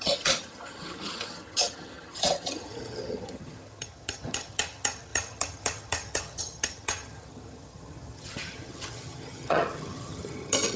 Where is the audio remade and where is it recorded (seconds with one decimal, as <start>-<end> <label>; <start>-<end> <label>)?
0.0-10.8 remade